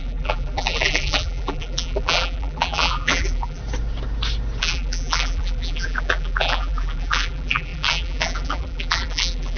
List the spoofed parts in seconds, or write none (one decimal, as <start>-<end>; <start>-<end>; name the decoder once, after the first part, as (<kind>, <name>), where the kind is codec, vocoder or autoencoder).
0.0-3.6 (vocoder, BigVGAN v2); 4.6-9.6